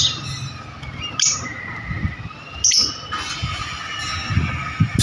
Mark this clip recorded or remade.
recorded